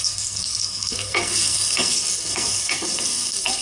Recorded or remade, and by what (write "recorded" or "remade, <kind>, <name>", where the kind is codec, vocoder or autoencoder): remade, codec, SNAC